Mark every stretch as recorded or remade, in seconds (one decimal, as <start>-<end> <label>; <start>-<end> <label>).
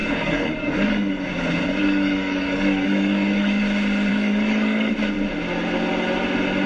0.0-1.3 remade; 1.3-1.8 recorded; 1.8-3.6 remade; 3.6-4.1 recorded; 4.1-4.9 remade; 4.9-6.7 recorded